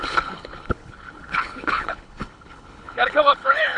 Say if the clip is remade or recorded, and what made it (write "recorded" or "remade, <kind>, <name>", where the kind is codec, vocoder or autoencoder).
remade, codec, HILCodec